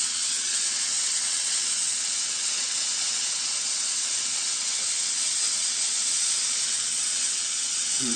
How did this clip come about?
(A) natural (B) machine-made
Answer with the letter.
B